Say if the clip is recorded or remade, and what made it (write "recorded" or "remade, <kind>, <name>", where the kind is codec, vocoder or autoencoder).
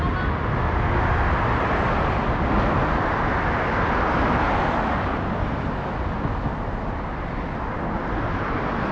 recorded